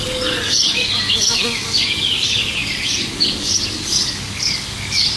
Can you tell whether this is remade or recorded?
remade